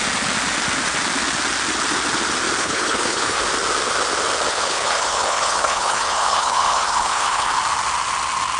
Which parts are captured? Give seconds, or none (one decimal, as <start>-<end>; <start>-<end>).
0.0-2.6; 3.4-4.5; 7.6-8.6